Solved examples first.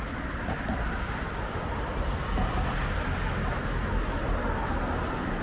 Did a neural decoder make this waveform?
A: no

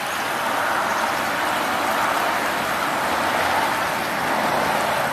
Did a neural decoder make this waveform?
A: no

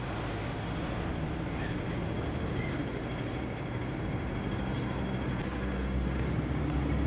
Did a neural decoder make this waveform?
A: no